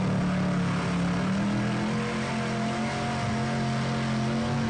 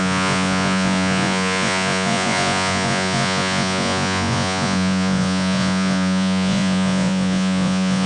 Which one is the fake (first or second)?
second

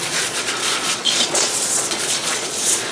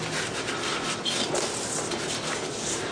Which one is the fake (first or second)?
first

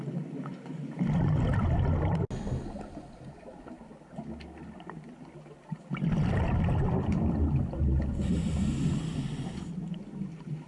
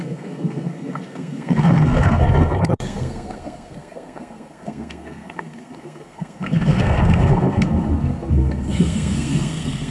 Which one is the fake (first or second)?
second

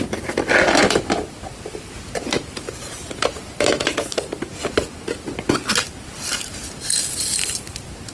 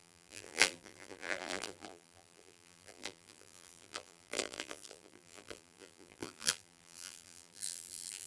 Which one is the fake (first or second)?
second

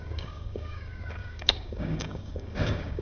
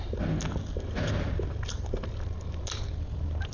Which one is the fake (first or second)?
first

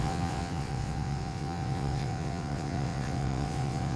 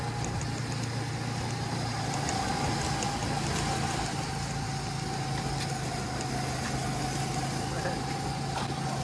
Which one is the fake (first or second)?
first